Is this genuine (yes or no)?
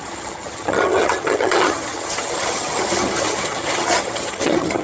no